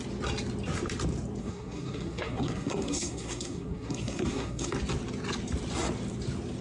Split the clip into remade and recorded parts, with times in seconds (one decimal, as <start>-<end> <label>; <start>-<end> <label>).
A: 0.0-1.4 recorded; 1.4-4.7 remade; 4.7-6.6 recorded

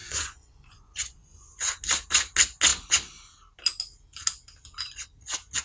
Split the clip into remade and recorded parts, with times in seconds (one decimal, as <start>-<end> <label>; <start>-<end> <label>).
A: 0.0-1.8 remade; 1.8-5.6 recorded

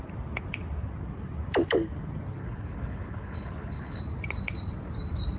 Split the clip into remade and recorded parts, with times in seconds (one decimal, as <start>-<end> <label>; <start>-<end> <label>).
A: 0.0-2.4 recorded; 2.4-4.0 remade; 4.0-5.4 recorded

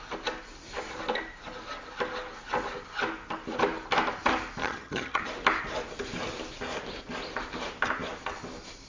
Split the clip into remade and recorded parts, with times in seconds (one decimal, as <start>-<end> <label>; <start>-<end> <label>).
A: 0.0-4.6 recorded; 4.6-5.2 remade; 5.2-8.9 recorded